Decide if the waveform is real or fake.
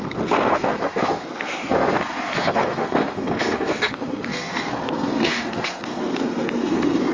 fake